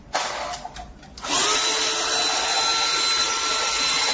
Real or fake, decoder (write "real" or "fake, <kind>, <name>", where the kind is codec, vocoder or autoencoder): real